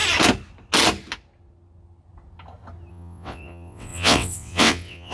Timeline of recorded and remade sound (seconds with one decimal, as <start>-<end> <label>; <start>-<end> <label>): 0.0-2.9 recorded; 2.9-5.1 remade